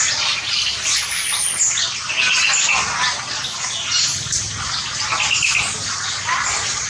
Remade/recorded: recorded